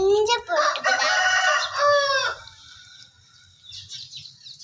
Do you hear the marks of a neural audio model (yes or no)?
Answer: no